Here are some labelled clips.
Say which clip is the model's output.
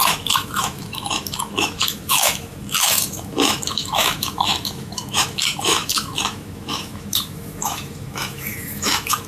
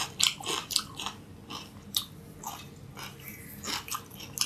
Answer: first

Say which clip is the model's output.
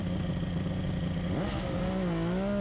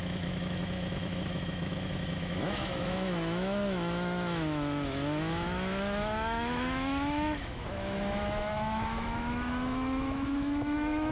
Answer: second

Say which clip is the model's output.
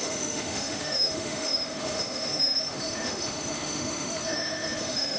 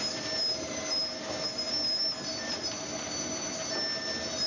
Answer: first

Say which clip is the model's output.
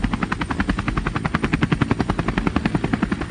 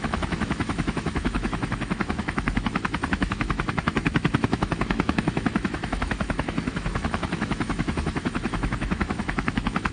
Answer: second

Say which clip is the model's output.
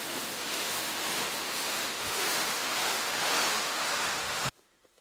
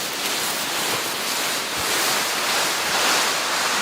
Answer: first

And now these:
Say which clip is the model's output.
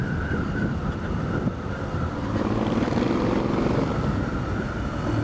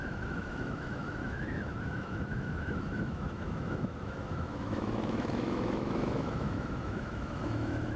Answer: second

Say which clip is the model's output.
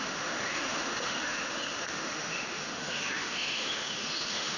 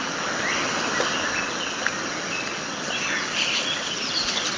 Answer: first